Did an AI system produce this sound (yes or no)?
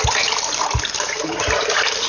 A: no